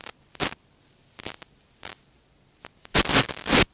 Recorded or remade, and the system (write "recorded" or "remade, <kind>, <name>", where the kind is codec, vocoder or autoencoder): recorded